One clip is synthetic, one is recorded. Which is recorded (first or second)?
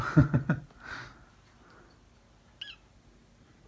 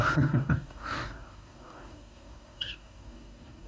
first